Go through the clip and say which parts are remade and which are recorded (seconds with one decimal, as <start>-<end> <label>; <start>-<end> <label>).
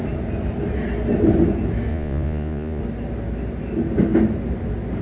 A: 0.0-1.9 recorded; 1.9-2.8 remade; 2.8-5.0 recorded